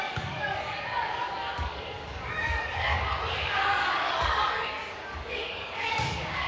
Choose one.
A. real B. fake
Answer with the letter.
B